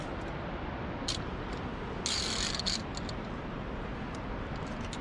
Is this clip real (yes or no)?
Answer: yes